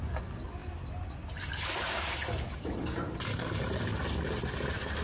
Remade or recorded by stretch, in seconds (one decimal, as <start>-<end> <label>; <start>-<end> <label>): 0.0-5.0 recorded